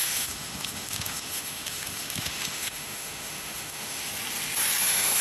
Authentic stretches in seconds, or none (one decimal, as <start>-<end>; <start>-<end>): 4.1-4.8